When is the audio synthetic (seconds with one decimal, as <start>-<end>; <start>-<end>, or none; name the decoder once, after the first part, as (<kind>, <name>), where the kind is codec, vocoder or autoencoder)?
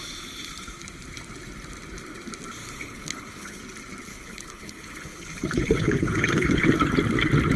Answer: 2.6-3.6 (codec, HILCodec); 4.1-6.7